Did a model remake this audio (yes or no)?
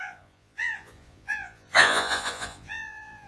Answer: yes